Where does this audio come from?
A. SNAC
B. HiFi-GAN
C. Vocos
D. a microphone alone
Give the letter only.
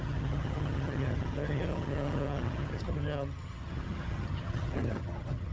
B